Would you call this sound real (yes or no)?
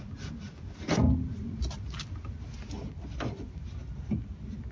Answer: yes